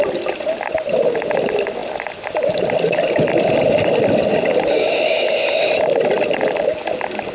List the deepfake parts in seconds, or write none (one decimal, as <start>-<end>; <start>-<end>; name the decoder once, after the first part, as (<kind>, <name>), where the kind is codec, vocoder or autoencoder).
none